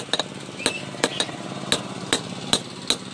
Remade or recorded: recorded